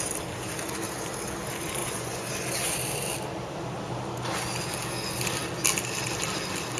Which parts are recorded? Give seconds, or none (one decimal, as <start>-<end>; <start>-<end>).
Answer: 0.0-1.8; 2.3-6.8

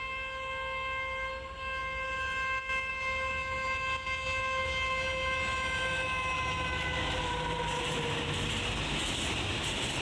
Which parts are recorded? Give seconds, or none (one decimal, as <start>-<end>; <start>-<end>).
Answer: 0.0-10.0